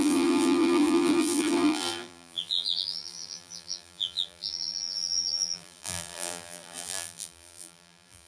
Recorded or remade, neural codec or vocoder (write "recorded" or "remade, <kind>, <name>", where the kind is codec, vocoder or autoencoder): remade, vocoder, BigVGAN v2